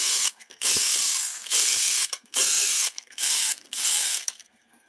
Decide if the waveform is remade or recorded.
remade